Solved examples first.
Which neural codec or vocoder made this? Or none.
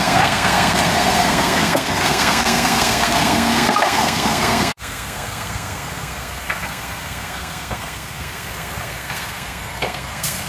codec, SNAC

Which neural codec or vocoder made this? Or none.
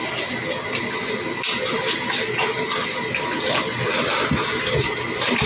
none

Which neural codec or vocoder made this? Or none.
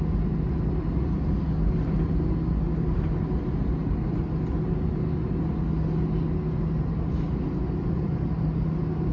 none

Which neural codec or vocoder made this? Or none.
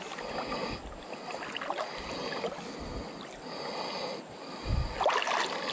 none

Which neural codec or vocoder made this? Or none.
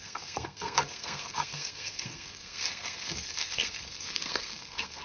codec, SNAC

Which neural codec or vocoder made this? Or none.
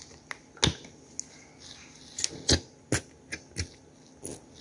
none